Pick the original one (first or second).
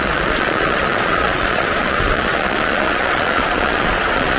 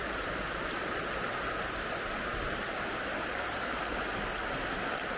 second